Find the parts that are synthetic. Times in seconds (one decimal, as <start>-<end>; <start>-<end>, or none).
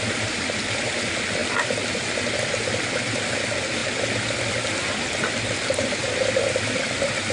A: none